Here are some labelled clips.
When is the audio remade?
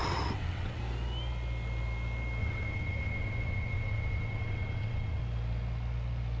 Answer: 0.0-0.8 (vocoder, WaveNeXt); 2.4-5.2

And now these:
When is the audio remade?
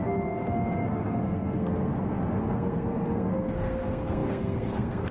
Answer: 0.0-1.9 (codec, SNAC); 2.4-5.1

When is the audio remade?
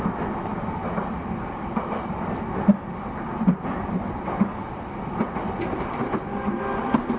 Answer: none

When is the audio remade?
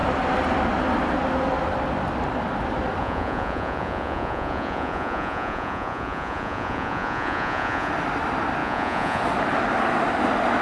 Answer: 3.0-7.9 (vocoder, Vocos); 8.6-9.2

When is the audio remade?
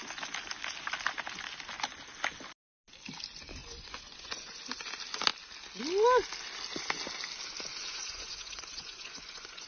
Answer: 3.6-4.6 (vocoder, Vocos); 7.7-9.7